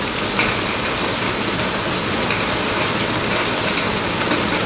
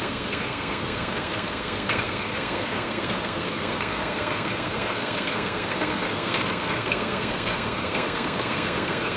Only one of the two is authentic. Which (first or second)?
first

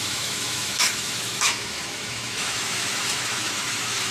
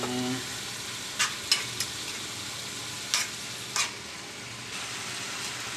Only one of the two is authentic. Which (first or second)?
second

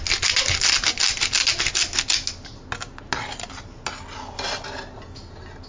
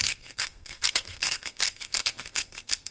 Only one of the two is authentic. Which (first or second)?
first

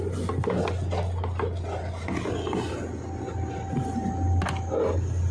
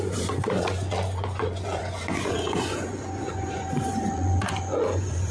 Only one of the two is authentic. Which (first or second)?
first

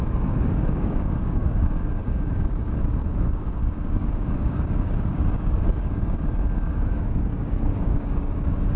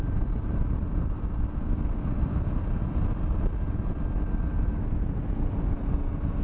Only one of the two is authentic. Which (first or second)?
second